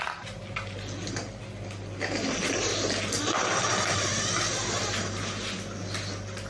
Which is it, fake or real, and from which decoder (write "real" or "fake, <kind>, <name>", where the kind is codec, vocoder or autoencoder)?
real